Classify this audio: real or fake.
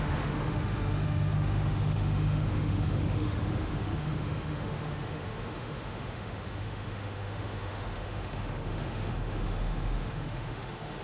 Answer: fake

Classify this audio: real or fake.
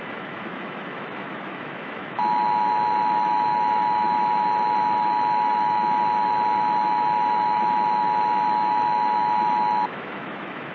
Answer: fake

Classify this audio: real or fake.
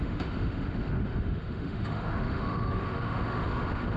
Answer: fake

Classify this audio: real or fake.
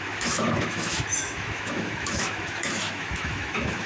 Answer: fake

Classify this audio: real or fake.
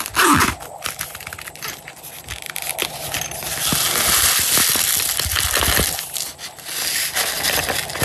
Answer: real